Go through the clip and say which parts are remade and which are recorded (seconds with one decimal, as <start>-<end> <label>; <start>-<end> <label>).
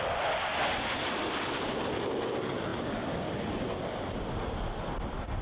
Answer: 0.0-5.4 recorded